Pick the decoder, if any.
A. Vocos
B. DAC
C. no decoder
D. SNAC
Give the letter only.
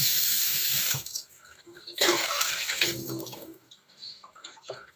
B